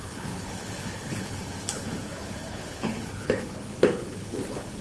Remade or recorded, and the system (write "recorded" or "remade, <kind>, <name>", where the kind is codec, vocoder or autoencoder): remade, codec, HILCodec